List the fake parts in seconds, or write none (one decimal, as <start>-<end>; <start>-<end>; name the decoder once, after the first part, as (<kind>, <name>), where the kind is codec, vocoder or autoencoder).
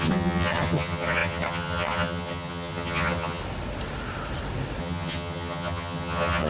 0.0-3.4 (vocoder, HiFi-GAN); 4.8-6.5